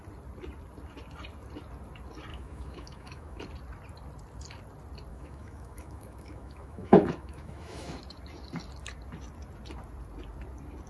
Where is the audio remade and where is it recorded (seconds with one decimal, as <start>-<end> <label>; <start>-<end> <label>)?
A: 0.0-2.3 recorded; 2.3-3.4 remade; 3.4-5.1 recorded; 5.1-8.0 remade; 8.0-10.9 recorded